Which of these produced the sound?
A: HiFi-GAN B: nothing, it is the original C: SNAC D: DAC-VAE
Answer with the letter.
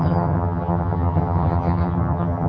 A